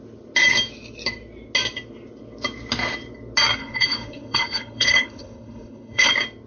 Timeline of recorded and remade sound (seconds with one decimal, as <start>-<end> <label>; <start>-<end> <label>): 0.0-3.6 recorded; 3.6-6.1 remade; 6.1-6.5 recorded